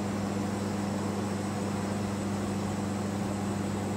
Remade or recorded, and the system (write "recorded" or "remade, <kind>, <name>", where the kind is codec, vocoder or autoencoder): recorded